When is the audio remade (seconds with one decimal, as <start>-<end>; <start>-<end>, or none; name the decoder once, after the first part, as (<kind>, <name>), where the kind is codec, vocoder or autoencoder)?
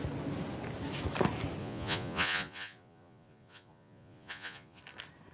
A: 1.6-4.8 (vocoder, Vocos)